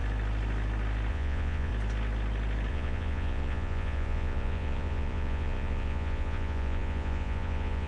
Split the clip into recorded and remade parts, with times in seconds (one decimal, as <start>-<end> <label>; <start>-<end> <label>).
0.0-1.1 recorded; 1.1-1.7 remade; 1.7-2.7 recorded; 2.7-7.9 remade